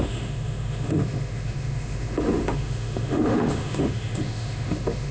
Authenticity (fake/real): fake